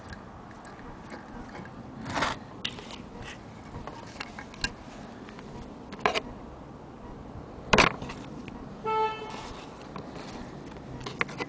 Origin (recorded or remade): recorded